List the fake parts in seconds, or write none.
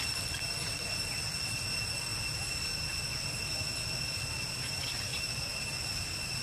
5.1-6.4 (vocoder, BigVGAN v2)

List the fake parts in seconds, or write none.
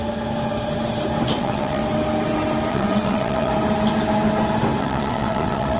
1.4-1.8 (vocoder, WaveNeXt); 2.7-3.5; 4.8-5.8